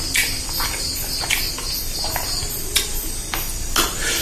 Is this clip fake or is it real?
real